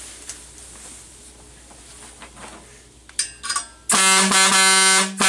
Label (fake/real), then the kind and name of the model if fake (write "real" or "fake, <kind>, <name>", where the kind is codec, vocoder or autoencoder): real